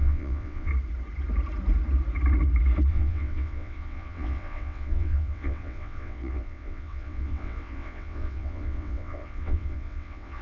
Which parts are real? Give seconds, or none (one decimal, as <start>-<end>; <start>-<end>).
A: 0.7-2.9